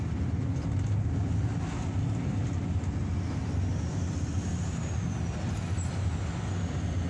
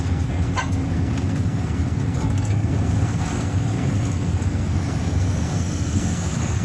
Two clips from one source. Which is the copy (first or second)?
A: second